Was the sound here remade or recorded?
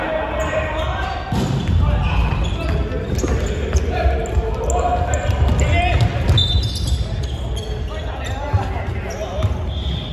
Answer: recorded